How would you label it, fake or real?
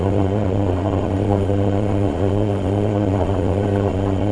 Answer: fake